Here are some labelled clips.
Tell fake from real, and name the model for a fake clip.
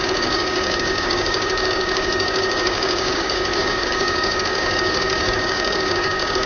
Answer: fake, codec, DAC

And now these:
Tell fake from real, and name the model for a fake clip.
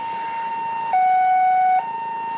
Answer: real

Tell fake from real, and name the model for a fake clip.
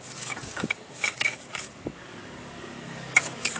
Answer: fake, codec, DAC